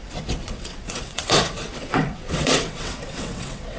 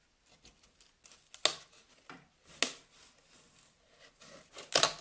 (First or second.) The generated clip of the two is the first